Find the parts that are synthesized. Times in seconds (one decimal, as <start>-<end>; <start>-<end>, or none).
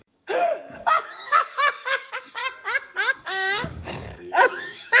0.0-2.4; 3.2-5.0